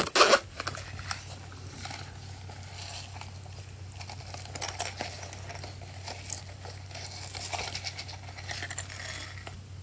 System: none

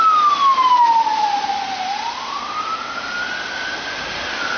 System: none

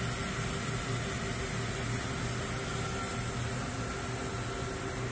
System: none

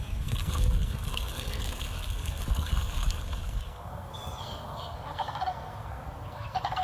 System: codec, SNAC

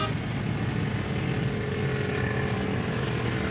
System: none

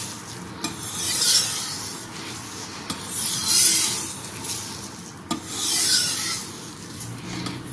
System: none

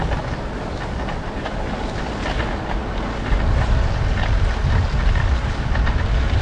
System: none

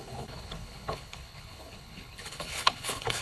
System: codec, HILCodec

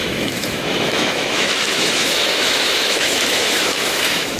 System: autoencoder, DAC-VAE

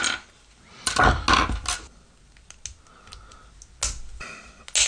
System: none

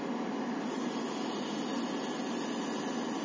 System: none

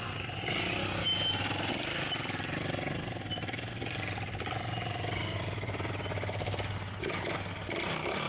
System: none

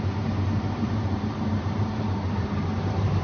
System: vocoder, BigVGAN v2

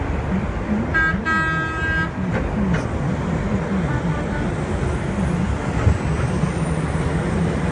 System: none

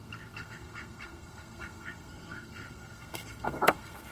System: codec, SNAC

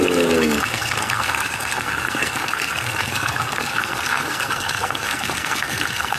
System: codec, SNAC